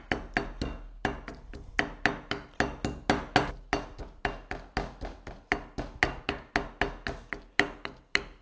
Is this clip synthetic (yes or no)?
no